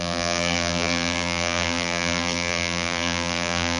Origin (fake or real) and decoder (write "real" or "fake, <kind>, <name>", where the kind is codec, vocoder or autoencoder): fake, vocoder, BigVGAN v2